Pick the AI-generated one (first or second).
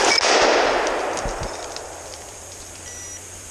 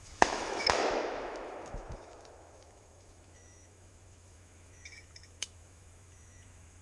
second